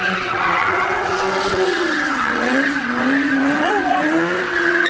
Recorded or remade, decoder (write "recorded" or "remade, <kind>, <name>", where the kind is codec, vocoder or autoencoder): remade, vocoder, WaveNeXt